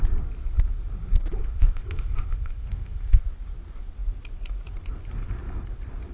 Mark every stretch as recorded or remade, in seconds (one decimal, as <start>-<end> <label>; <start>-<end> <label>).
0.0-1.5 recorded; 1.5-3.2 remade; 3.2-6.1 recorded